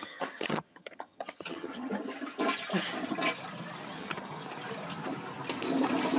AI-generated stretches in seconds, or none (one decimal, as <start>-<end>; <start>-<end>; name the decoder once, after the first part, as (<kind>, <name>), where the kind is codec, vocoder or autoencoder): 0.0-1.9 (vocoder, HiFi-GAN); 3.9-4.4